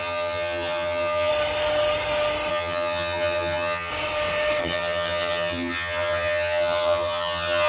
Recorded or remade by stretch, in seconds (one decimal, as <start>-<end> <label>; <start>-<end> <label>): 0.0-1.3 remade; 1.3-2.5 recorded; 2.5-3.9 remade; 3.9-4.6 recorded; 4.6-7.7 remade